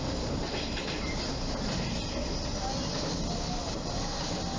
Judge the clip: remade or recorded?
recorded